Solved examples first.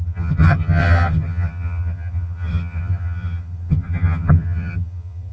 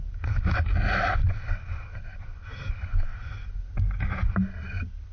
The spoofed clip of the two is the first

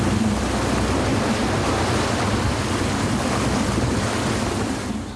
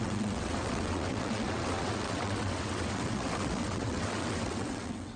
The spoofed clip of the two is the second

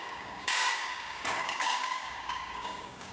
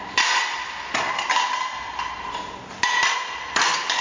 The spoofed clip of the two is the first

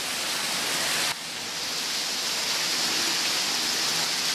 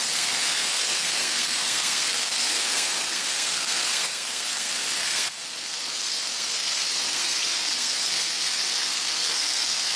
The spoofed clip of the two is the second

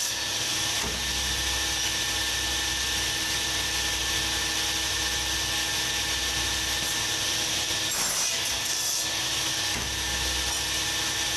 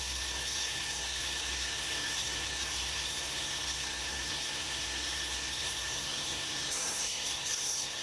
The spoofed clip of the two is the second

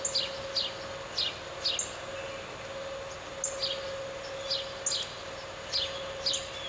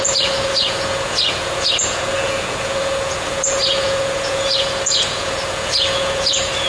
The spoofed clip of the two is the second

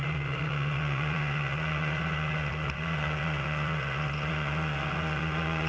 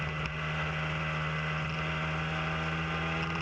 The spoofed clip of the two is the first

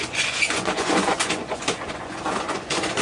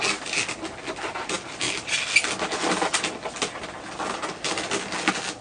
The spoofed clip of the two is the first